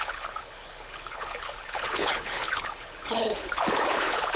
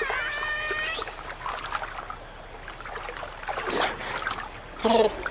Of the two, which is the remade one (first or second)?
first